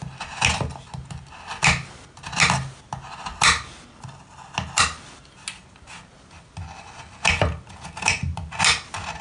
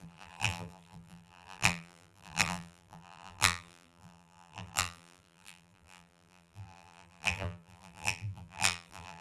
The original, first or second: first